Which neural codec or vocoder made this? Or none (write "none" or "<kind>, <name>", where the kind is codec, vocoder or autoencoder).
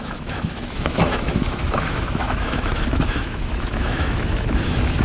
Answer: autoencoder, DAC-VAE